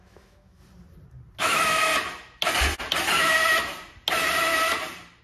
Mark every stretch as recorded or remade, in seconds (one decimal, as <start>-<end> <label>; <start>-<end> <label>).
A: 0.0-0.6 remade; 0.6-1.4 recorded; 1.4-1.9 remade; 1.9-5.2 recorded